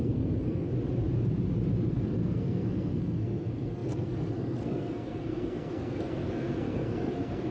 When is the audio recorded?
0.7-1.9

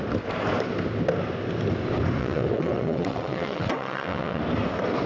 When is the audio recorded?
0.0-2.2; 4.4-5.1